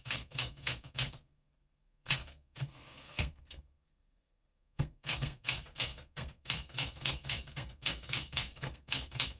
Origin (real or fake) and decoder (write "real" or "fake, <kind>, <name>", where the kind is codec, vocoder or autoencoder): fake, codec, SNAC